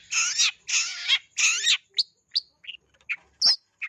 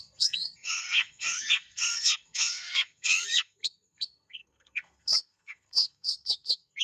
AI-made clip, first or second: second